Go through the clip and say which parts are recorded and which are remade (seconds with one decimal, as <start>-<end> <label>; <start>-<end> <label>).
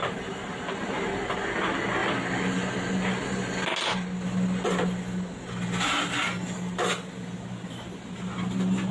0.0-8.9 recorded